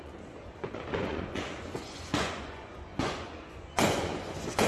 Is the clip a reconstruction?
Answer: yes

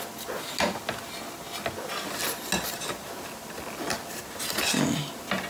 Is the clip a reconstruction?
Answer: no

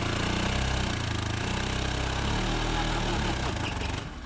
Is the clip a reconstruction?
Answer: no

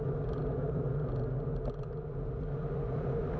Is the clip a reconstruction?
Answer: no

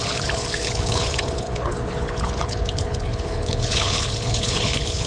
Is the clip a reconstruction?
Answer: yes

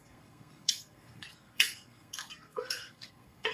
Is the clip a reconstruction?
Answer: yes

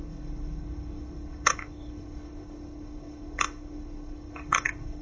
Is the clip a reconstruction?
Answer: yes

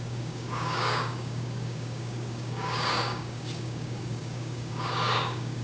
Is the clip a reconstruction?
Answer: yes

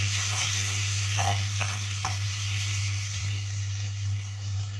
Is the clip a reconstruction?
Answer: yes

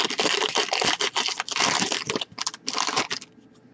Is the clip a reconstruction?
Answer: no